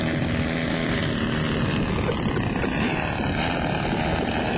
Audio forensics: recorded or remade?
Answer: recorded